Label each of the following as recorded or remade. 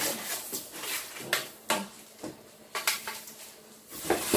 recorded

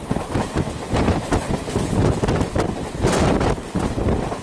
recorded